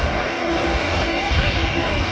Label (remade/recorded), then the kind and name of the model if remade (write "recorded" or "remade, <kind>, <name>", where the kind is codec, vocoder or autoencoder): remade, codec, DAC